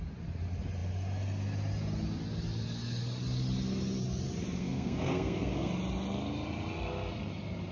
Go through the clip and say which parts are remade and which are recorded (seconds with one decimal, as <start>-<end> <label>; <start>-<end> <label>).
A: 0.0-4.6 recorded; 4.6-5.7 remade; 5.7-7.7 recorded